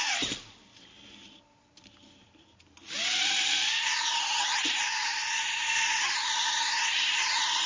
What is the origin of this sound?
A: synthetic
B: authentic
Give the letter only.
B